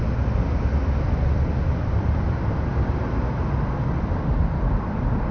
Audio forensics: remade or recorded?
recorded